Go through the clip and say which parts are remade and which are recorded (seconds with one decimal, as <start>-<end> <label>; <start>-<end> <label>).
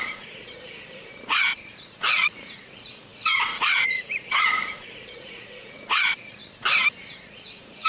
0.0-6.4 remade; 6.4-7.0 recorded; 7.0-7.9 remade